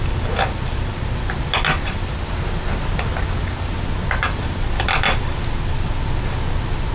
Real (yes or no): yes